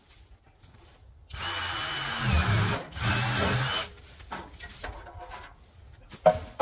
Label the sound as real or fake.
real